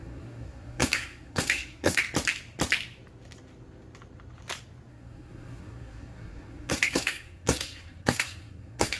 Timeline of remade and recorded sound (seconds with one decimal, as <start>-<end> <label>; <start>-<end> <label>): 0.0-2.0 remade; 2.0-4.9 recorded; 4.9-9.0 remade